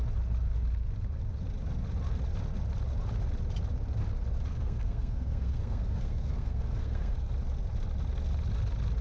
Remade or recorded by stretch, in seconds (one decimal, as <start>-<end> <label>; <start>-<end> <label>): 0.0-4.5 recorded; 4.5-7.3 remade; 7.3-9.0 recorded